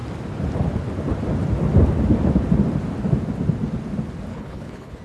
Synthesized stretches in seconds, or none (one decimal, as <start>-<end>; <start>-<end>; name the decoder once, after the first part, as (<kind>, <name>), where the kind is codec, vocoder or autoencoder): 4.3-5.0 (codec, HILCodec)